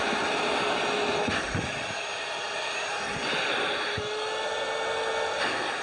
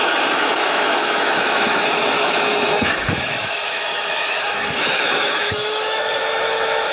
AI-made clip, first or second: second